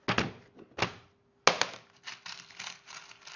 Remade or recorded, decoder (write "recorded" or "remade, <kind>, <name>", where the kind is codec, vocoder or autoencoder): recorded